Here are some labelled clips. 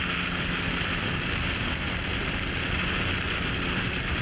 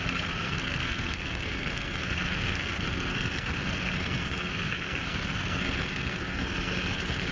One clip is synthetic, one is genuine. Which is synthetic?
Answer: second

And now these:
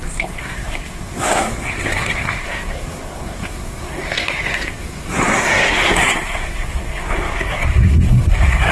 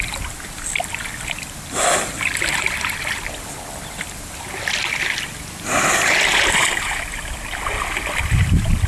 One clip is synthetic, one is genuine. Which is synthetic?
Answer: first